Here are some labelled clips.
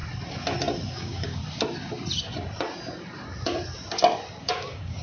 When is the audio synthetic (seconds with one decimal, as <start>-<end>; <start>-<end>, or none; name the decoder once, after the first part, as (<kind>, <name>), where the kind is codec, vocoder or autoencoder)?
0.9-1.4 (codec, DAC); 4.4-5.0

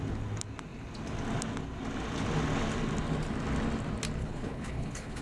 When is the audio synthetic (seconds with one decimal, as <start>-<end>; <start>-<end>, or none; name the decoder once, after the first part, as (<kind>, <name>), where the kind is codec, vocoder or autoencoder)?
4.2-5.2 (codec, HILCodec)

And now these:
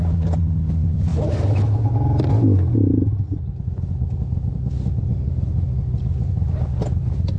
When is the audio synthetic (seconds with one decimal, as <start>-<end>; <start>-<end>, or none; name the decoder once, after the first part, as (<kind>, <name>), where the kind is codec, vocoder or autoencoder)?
none